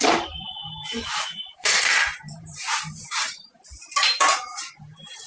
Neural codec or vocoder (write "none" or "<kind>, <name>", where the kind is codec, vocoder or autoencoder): vocoder, BigVGAN v2